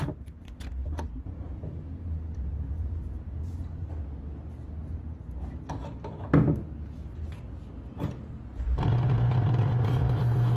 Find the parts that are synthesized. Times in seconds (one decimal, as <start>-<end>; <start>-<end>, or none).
0.8-3.9; 8.5-10.2